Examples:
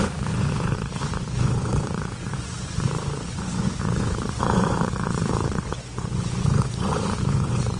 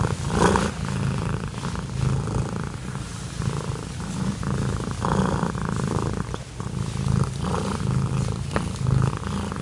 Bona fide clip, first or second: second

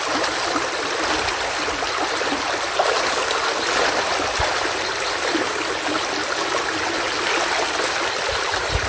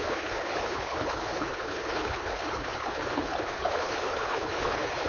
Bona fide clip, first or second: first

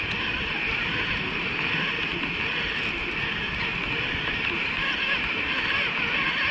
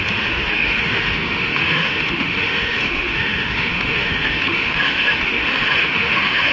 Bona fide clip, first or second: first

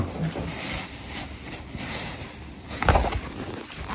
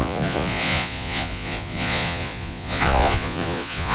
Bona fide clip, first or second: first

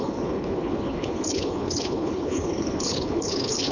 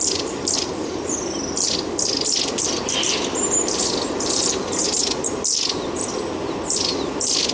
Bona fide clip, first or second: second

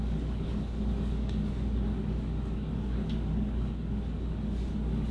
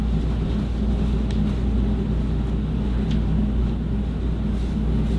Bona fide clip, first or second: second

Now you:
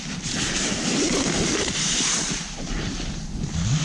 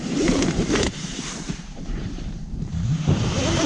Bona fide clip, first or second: first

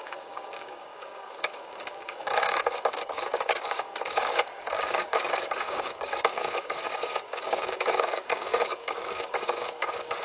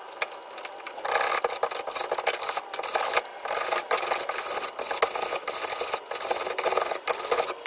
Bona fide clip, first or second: second